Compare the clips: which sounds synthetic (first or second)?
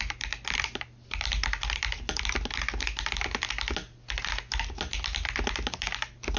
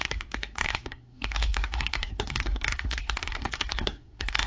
second